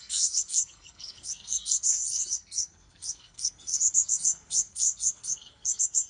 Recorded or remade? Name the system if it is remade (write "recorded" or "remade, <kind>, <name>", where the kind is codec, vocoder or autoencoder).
remade, codec, SNAC